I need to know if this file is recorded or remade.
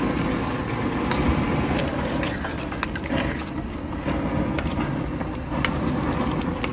recorded